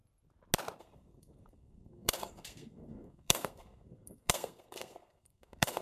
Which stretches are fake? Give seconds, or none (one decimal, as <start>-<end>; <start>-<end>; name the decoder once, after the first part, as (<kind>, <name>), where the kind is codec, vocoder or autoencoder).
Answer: 0.8-5.8 (codec, SNAC)